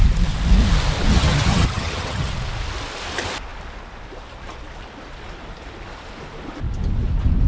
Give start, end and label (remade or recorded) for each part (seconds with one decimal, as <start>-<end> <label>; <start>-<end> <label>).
0.0-1.1 recorded; 1.1-2.3 remade; 2.3-7.5 recorded